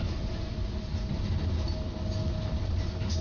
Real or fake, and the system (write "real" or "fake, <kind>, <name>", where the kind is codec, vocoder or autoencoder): real